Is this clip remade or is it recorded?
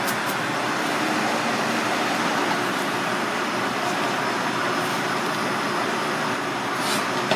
recorded